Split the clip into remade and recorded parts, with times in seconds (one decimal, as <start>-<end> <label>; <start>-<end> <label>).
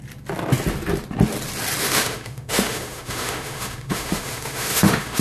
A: 0.0-1.8 recorded; 1.8-5.2 remade